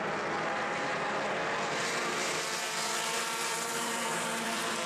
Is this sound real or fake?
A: fake